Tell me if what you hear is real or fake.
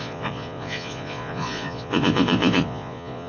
fake